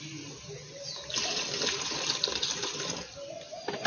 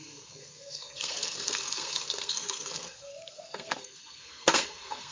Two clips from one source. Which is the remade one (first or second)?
second